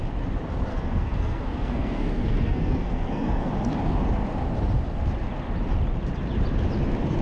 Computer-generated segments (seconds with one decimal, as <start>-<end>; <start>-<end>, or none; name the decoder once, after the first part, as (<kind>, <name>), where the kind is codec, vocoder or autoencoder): 0.7-3.5 (codec, SNAC)

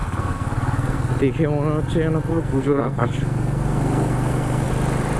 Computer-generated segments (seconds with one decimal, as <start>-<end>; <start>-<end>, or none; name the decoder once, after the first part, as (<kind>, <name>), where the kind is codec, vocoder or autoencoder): 0.0-1.1 (codec, SNAC); 2.3-4.7

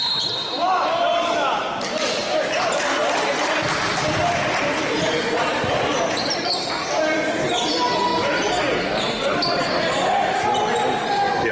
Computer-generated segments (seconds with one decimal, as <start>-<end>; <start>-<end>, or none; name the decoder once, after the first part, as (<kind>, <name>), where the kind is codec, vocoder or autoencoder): none

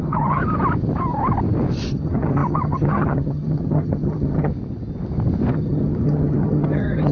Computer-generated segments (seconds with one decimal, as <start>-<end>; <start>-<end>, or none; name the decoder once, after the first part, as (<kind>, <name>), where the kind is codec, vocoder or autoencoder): 0.0-0.4 (vocoder, HiFi-GAN); 1.9-4.5; 5.5-7.1

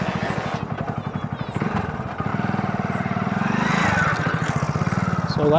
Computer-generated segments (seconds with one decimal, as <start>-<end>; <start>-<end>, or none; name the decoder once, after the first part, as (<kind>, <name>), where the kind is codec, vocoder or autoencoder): none

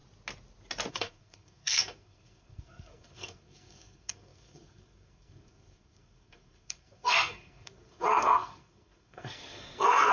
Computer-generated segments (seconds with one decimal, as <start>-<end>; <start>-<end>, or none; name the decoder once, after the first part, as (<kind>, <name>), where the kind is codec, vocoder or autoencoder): 0.9-10.1 (codec, SNAC)